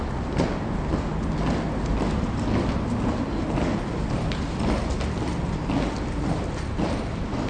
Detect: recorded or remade recorded